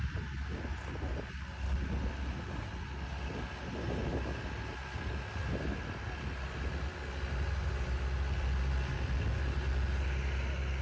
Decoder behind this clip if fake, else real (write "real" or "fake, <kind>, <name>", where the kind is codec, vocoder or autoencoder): real